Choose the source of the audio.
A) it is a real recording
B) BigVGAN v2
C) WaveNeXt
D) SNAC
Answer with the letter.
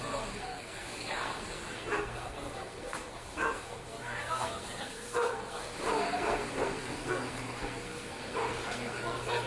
D